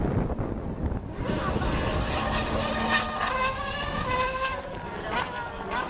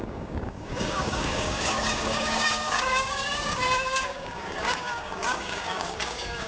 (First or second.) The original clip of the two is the first